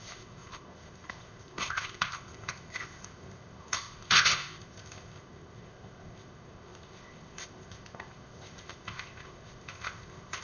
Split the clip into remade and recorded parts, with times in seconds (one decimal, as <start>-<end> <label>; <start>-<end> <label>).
0.0-10.4 remade